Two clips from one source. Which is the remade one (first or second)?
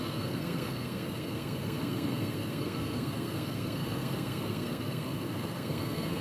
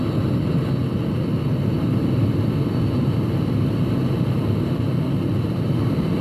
first